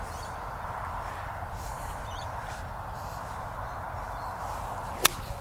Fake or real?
real